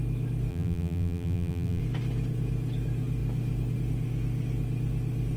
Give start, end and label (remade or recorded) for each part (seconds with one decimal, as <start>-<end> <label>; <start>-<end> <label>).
0.0-0.5 recorded; 0.5-1.8 remade; 1.8-5.4 recorded